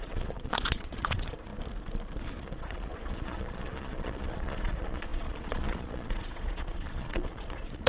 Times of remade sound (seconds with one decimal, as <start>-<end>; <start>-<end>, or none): 0.0-1.5; 2.4-7.9